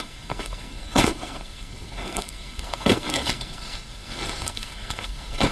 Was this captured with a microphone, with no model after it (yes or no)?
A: no